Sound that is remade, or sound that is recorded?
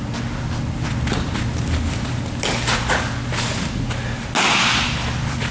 recorded